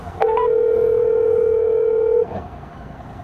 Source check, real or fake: fake